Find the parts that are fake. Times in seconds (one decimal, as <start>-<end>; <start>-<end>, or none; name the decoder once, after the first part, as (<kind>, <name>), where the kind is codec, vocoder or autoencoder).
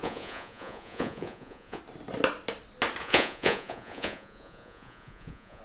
0.0-1.8 (vocoder, Vocos); 3.0-5.6